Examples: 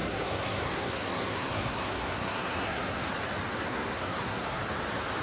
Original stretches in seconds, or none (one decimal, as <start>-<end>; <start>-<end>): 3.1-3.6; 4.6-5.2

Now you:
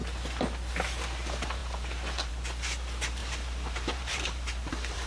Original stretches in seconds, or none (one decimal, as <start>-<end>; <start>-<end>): 0.0-3.2

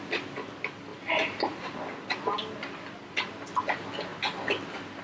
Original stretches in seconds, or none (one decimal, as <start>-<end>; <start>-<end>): 0.0-5.0

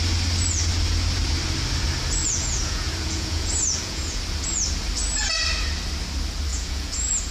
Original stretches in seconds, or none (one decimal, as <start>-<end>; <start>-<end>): 0.0-2.2; 4.2-6.5